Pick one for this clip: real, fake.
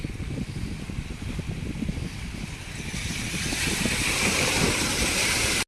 real